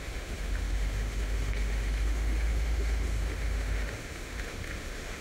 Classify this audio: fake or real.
fake